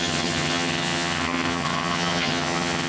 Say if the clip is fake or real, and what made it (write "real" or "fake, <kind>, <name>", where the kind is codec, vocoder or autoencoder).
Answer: fake, vocoder, HiFi-GAN